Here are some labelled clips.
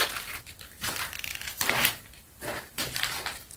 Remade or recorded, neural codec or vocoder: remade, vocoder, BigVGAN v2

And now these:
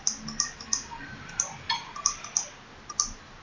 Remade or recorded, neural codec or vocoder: recorded